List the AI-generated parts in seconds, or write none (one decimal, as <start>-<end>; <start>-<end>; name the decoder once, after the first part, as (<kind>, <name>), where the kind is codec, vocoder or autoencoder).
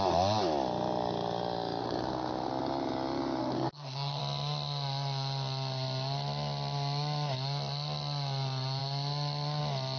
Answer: 1.8-2.5 (codec, SNAC); 3.4-4.2